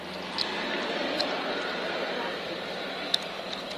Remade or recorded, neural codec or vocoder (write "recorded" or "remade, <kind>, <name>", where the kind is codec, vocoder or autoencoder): recorded